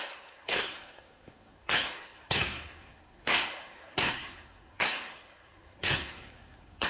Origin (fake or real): fake